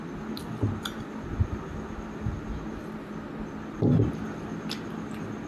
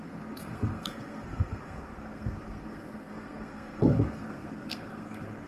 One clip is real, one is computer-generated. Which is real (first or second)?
first